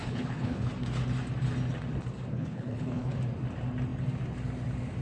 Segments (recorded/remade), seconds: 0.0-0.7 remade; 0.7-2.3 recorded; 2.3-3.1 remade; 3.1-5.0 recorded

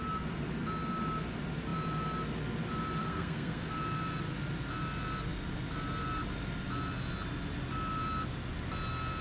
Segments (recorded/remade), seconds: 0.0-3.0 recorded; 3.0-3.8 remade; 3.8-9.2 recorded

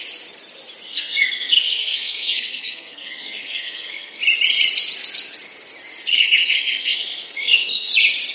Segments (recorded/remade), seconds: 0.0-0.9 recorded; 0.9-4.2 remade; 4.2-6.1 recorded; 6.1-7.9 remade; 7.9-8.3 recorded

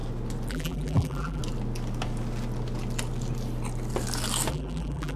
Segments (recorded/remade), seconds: 0.0-0.5 recorded; 0.5-1.4 remade; 1.4-4.5 recorded; 4.5-5.2 remade

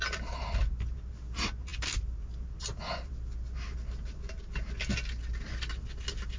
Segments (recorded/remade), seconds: 0.0-6.4 recorded